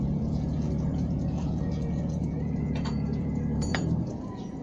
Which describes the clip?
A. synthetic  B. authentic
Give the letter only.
A